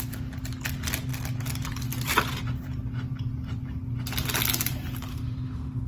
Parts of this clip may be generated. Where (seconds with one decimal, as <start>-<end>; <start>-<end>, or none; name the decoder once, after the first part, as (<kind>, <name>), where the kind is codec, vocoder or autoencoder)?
5.1-5.9 (autoencoder, DAC-VAE)